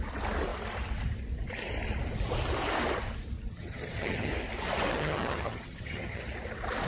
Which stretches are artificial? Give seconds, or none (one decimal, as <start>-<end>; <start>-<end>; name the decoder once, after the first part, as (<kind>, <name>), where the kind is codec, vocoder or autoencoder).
3.5-4.3 (vocoder, HiFi-GAN); 4.9-6.2